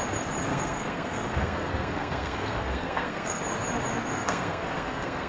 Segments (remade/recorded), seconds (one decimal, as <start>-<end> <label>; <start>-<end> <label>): 0.0-0.5 recorded; 0.5-3.4 remade; 3.4-4.1 recorded; 4.1-5.3 remade